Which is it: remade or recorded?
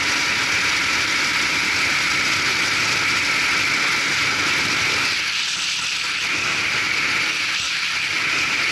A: recorded